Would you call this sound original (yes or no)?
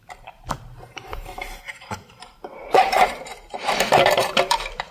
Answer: no